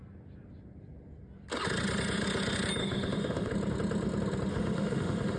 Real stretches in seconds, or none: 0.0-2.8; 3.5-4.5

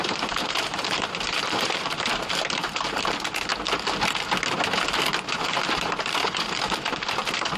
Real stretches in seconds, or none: 3.5-5.4

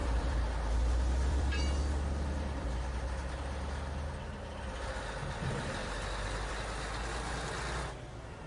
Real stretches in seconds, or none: 3.3-5.8; 6.5-8.5

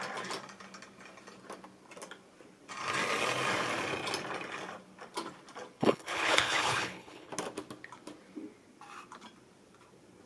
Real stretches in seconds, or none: 0.0-5.8; 7.3-10.3

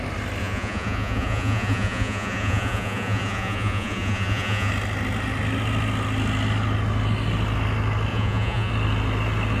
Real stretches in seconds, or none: 0.0-0.4; 4.7-8.1; 8.7-9.6